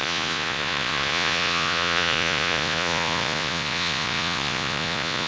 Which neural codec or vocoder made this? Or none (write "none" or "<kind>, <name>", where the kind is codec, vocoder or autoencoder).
vocoder, Vocos